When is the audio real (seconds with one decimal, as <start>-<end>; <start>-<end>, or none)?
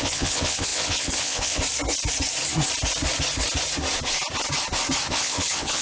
1.6-5.1